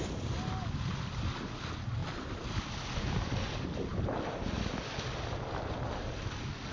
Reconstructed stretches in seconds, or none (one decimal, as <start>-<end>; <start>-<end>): 3.9-4.7